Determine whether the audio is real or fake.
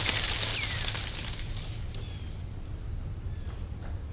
real